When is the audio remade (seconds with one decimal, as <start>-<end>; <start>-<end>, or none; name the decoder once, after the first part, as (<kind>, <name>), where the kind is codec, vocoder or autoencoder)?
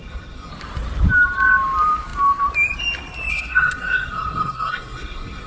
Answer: 0.0-0.5 (codec, SNAC); 3.3-5.5